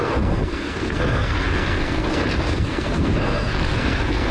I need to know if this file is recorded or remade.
remade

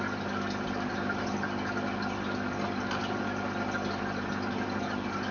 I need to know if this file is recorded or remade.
recorded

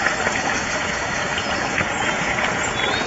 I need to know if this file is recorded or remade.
remade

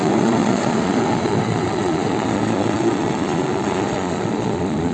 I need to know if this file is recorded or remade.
remade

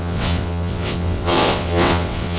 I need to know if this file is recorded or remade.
remade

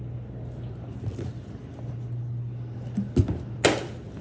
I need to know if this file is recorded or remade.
recorded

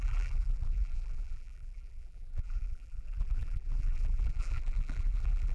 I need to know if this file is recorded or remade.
remade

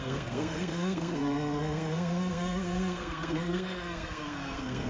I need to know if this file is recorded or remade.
remade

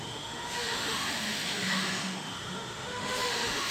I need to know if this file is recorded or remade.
remade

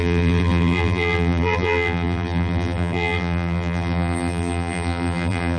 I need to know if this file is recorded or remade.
remade